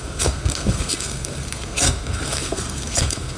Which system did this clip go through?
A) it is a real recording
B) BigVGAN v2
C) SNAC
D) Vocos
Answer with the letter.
C